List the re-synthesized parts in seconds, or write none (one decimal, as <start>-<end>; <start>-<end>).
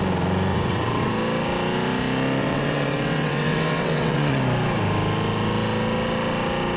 0.5-1.1; 2.4-4.4